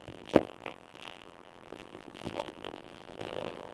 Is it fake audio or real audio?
fake